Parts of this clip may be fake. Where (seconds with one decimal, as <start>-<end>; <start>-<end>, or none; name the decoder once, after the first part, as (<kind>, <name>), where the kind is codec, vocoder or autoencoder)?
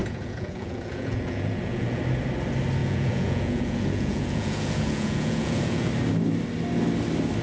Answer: 0.0-2.0 (vocoder, Vocos); 2.8-5.9